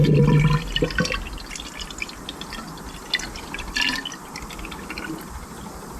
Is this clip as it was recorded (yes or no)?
yes